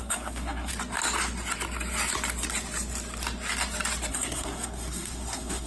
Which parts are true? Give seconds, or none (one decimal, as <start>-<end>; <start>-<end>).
0.7-4.1